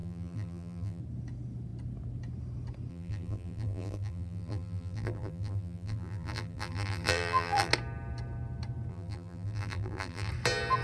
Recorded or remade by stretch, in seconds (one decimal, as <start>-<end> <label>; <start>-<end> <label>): 0.0-1.0 remade; 1.0-2.9 recorded; 2.9-7.7 remade; 7.7-8.9 recorded; 8.9-10.3 remade; 10.3-10.8 recorded